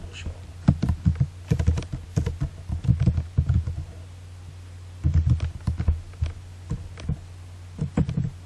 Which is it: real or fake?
real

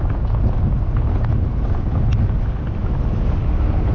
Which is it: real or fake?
real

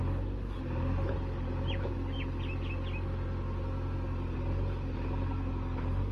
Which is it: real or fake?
real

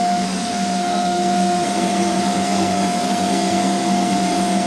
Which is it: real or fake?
fake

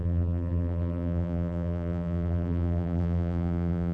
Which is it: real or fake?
fake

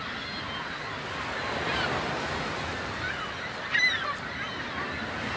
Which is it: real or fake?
real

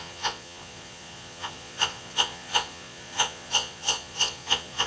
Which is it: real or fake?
fake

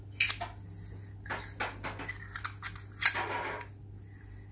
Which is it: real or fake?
real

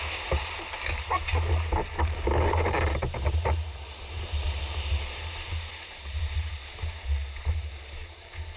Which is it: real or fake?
real